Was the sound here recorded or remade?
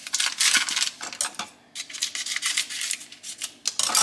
recorded